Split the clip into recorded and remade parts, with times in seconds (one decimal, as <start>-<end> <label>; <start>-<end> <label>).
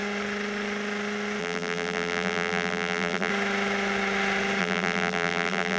0.0-1.4 recorded; 1.4-3.3 remade; 3.3-4.6 recorded; 4.6-5.8 remade